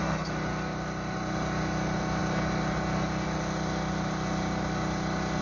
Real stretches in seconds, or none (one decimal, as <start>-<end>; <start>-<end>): 0.0-5.4